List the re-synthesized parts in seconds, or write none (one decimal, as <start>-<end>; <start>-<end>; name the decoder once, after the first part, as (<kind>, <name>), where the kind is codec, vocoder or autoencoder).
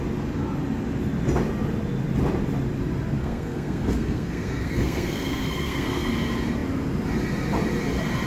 3.2-6.1 (codec, SNAC)